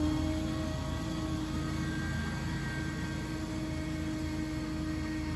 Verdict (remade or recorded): recorded